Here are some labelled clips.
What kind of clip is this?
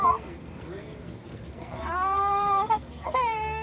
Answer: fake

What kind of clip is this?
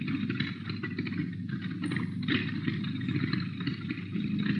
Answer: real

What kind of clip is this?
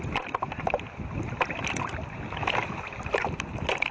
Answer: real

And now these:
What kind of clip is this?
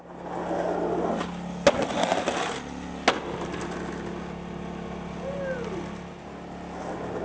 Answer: real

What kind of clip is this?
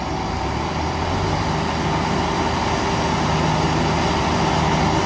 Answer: real